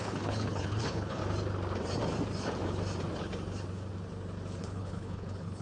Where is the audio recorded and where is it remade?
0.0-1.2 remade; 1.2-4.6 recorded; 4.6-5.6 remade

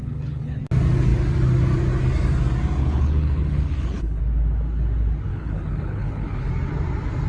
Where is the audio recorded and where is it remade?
0.0-0.6 remade; 0.6-2.8 recorded; 2.8-4.2 remade; 4.2-5.3 recorded; 5.3-6.5 remade; 6.5-7.3 recorded

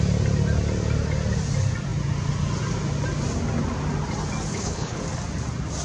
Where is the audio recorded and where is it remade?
0.0-4.5 recorded; 4.5-5.0 remade; 5.0-5.8 recorded

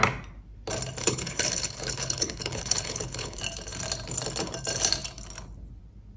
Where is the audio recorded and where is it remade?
0.0-1.0 recorded; 1.0-3.4 remade; 3.4-6.2 recorded

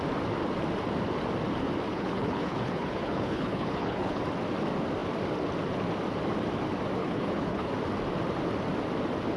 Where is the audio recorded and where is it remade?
0.0-1.9 recorded; 1.9-4.2 remade; 4.2-7.0 recorded; 7.0-7.7 remade; 7.7-9.4 recorded

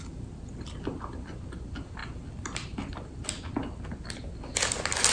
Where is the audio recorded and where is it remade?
0.0-5.1 recorded

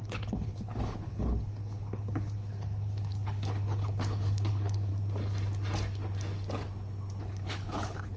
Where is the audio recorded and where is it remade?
0.0-4.9 remade; 4.9-7.2 recorded; 7.2-8.2 remade